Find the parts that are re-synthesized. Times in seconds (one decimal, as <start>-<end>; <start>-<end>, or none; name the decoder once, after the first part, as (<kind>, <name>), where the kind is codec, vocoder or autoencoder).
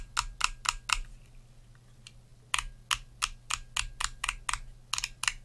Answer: none